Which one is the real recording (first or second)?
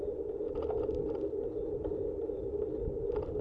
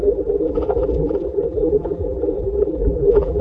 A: first